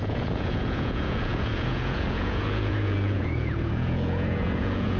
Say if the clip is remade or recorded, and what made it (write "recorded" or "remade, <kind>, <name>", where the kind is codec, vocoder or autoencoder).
remade, vocoder, Vocos